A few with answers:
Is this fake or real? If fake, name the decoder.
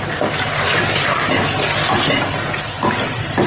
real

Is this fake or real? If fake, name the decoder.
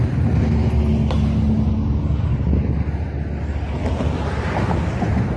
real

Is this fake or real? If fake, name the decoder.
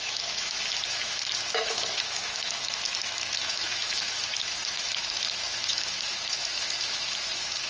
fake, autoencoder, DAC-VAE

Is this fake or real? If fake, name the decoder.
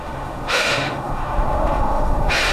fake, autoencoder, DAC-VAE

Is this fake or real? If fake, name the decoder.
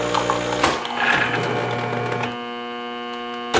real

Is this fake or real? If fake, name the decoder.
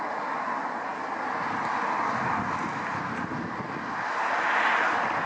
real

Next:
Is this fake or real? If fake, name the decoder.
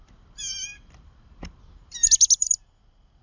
real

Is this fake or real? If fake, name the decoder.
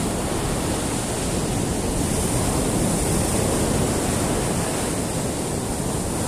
real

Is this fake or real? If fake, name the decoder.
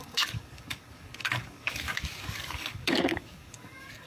fake, codec, DAC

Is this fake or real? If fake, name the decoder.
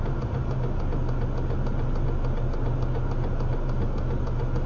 real